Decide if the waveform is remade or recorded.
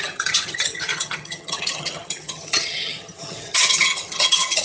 remade